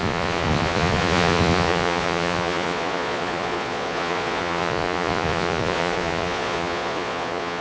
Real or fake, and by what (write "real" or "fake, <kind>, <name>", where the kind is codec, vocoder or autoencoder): fake, vocoder, Vocos